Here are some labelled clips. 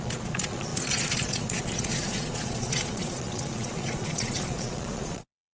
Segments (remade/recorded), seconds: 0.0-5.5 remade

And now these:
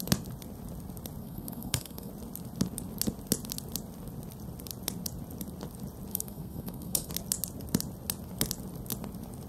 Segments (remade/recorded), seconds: 0.0-1.2 recorded; 1.2-2.1 remade; 2.1-6.1 recorded; 6.1-7.1 remade; 7.1-9.5 recorded

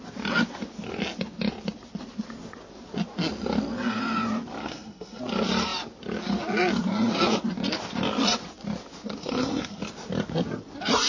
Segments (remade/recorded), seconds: 0.0-4.6 recorded; 4.6-5.2 remade; 5.2-9.2 recorded; 9.2-9.8 remade; 9.8-11.1 recorded

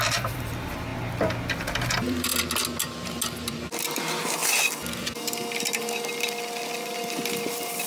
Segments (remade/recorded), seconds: 0.0-0.9 remade; 0.9-1.9 recorded; 1.9-2.3 remade; 2.3-3.4 recorded; 3.4-4.4 remade; 4.4-7.5 recorded; 7.5-7.9 remade

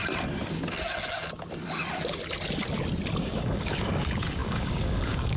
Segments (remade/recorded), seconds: 0.0-3.2 recorded; 3.2-5.4 remade

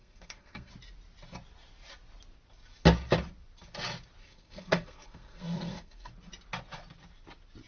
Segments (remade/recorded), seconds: 0.0-0.7 remade; 0.7-4.2 recorded; 4.2-6.1 remade; 6.1-7.7 recorded